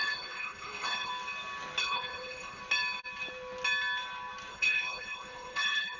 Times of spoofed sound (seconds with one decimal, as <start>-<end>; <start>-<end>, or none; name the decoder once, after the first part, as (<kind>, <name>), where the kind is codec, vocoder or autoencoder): 0.0-1.1 (codec, HILCodec); 1.8-2.6; 4.5-6.0